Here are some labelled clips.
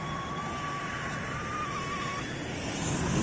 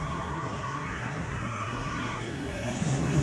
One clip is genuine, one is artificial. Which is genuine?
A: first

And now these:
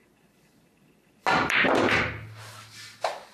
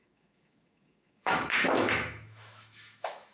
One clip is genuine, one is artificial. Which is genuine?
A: first